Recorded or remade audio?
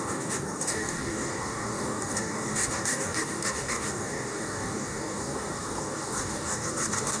remade